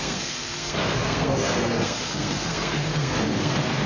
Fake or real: fake